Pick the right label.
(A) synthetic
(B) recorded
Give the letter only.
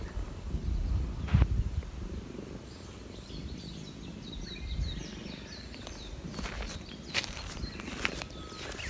B